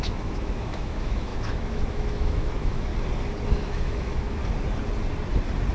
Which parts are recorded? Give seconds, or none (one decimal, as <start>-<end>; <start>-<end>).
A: 2.9-3.5; 4.4-5.7